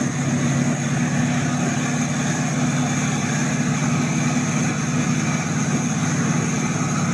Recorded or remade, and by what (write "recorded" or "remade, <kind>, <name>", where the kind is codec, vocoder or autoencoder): recorded